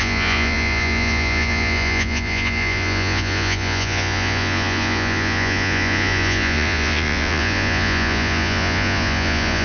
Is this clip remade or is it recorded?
remade